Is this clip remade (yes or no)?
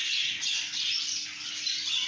no